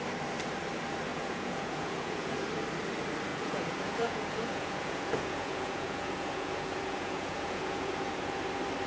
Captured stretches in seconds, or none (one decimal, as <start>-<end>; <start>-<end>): 0.0-1.1; 2.4-3.3; 8.4-8.9